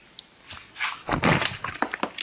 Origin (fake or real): real